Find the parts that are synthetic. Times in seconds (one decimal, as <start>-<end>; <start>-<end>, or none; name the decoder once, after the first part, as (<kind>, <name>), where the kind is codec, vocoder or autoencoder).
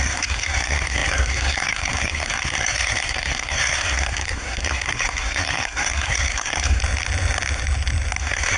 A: 0.0-6.8 (codec, SNAC); 8.2-8.6